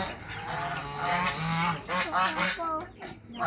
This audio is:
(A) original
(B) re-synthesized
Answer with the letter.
A